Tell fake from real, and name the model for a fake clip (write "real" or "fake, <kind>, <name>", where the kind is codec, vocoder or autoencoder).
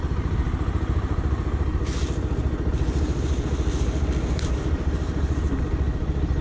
real